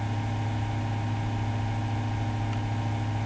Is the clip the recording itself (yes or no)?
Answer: yes